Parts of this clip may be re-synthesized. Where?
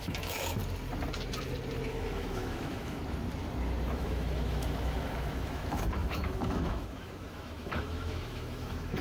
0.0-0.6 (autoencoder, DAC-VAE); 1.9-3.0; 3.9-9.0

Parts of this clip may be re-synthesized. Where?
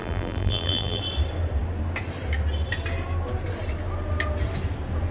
0.0-1.0 (vocoder, BigVGAN v2)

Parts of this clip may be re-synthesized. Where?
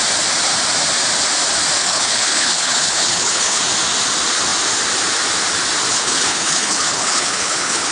1.8-3.6 (codec, HILCodec); 5.9-7.9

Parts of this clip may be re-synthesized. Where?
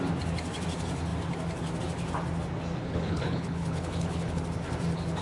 2.8-4.4 (codec, HILCodec)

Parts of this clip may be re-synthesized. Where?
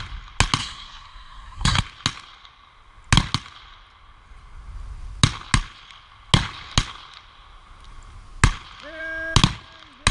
0.6-1.8 (codec, SNAC)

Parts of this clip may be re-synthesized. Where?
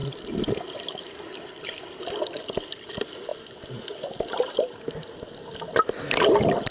none